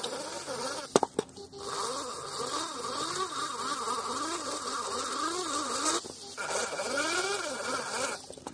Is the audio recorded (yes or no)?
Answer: yes